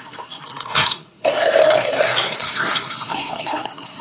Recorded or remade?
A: remade